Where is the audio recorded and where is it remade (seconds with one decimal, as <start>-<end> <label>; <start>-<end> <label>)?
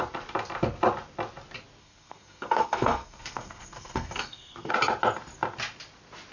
0.0-1.8 recorded; 1.8-4.7 remade; 4.7-6.3 recorded